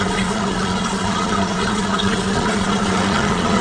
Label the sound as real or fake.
fake